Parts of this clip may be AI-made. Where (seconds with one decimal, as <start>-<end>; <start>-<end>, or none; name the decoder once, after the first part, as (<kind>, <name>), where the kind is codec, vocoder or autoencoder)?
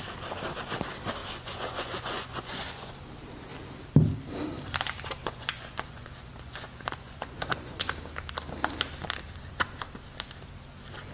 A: 1.2-2.9 (vocoder, Vocos); 5.2-7.9